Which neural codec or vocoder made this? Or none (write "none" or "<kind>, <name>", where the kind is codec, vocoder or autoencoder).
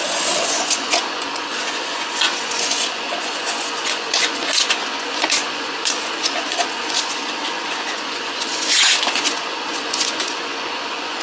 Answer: vocoder, Vocos